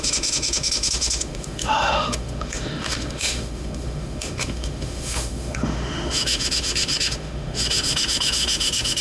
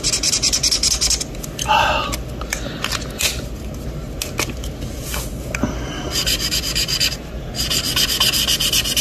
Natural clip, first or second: second